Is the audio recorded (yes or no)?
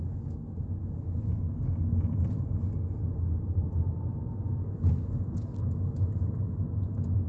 yes